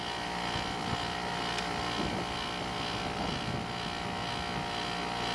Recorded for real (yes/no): yes